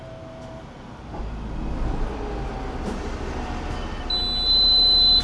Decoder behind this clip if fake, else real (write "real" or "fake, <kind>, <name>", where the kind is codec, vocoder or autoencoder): real